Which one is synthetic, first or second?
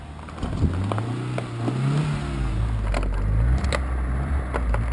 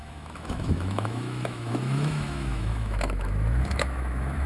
second